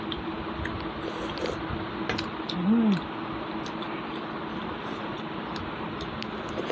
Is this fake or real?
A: real